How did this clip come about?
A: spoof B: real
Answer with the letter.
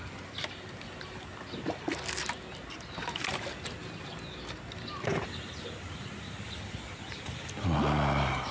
B